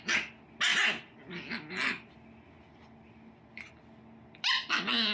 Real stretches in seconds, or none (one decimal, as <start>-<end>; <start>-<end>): 0.0-5.1